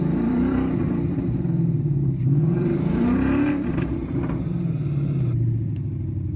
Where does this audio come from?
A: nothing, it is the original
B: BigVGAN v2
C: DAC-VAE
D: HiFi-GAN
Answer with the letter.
B